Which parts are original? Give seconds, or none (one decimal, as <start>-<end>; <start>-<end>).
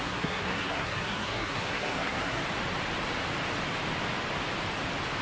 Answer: 2.4-5.2